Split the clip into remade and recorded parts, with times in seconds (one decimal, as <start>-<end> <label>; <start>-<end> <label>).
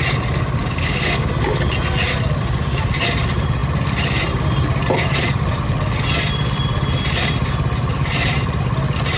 0.0-0.6 recorded; 0.6-1.3 remade; 1.3-9.2 recorded